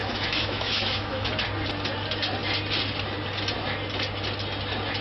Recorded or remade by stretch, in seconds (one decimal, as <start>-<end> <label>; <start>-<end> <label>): 0.0-1.3 remade; 1.3-5.0 recorded